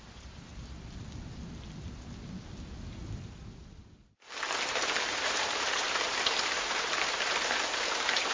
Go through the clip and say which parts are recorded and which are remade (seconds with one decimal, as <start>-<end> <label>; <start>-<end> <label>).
0.0-0.5 remade; 0.5-5.1 recorded; 5.1-8.3 remade